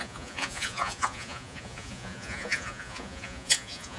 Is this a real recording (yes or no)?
no